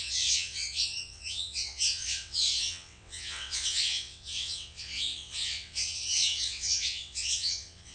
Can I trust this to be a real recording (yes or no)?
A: no